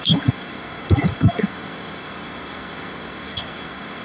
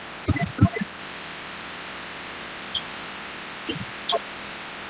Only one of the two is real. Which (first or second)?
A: second